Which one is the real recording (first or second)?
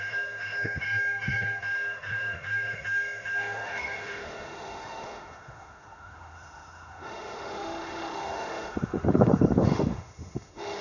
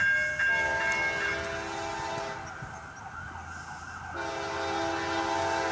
second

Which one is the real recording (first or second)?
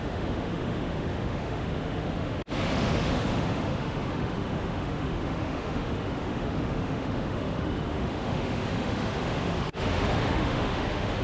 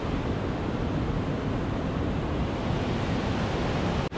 second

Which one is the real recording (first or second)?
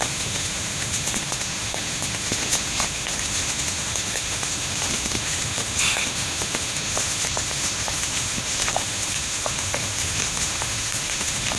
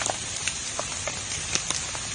second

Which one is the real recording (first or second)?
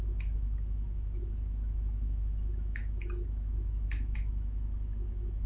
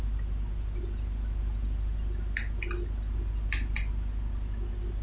second